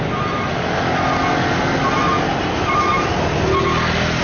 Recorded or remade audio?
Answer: recorded